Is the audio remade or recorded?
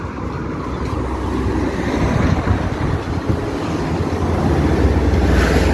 recorded